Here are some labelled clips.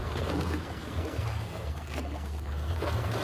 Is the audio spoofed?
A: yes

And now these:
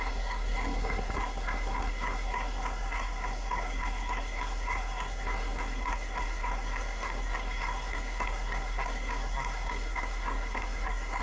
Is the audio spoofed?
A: yes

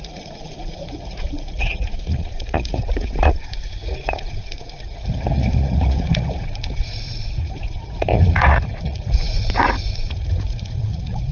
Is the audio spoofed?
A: yes